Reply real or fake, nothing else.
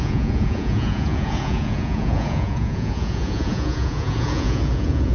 fake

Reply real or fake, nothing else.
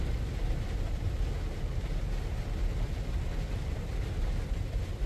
real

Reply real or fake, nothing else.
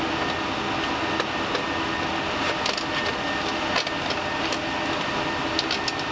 real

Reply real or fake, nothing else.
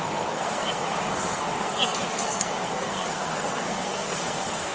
fake